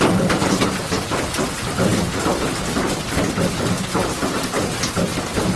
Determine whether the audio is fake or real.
real